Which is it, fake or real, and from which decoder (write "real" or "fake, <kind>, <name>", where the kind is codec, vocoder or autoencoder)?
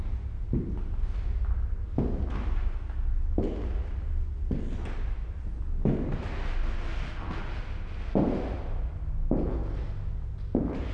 real